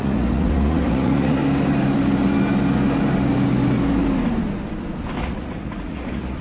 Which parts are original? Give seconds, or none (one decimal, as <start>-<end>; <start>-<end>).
1.4-5.2

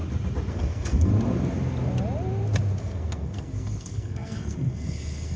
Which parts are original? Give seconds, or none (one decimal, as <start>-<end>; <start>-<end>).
0.0-0.5; 1.1-2.8